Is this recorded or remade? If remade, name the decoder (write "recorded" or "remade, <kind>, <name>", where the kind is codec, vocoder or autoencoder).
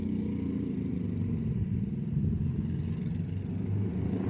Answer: recorded